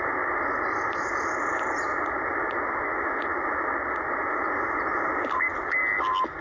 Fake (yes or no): no